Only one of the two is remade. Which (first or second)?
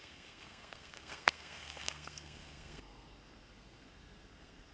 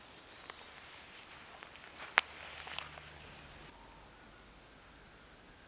first